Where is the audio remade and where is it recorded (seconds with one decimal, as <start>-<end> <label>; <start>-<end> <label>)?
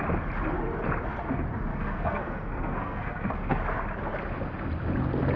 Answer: 0.0-1.7 recorded; 1.7-3.6 remade; 3.6-5.4 recorded